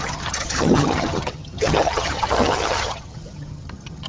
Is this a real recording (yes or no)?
no